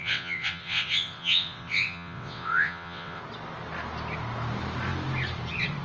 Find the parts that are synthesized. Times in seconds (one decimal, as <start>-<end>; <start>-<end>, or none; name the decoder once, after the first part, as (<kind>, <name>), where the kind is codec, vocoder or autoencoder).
0.0-3.2 (vocoder, WaveNeXt)